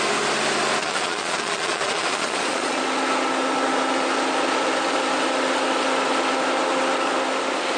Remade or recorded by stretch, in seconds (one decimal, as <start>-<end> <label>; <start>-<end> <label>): 0.0-0.8 recorded; 0.8-2.8 remade; 2.8-7.8 recorded